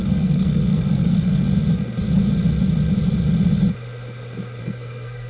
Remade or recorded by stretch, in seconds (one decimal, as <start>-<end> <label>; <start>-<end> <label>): 0.0-1.4 remade; 1.4-4.6 recorded; 4.6-5.3 remade